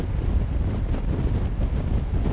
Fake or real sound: real